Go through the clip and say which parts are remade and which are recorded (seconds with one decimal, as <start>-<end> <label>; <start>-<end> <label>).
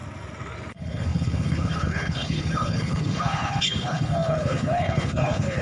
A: 0.0-0.7 recorded; 0.7-5.6 remade